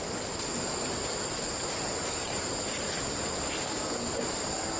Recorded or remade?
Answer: recorded